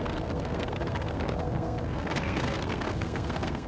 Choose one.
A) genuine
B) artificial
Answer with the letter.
B